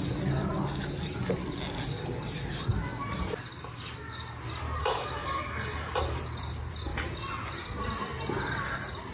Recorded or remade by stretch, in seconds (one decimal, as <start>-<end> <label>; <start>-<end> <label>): 0.0-4.8 recorded; 4.8-5.9 remade; 5.9-9.1 recorded